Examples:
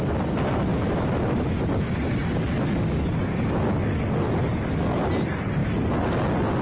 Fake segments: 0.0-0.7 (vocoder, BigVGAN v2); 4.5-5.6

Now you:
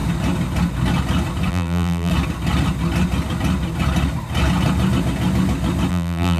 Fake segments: 1.5-2.1 (vocoder, BigVGAN v2); 5.9-6.4